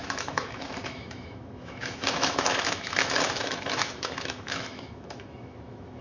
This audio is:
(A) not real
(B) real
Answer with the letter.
A